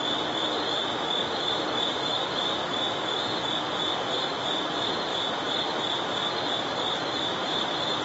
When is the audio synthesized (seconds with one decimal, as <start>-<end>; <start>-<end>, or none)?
0.0-0.9; 2.0-2.6; 4.1-5.1; 6.6-8.0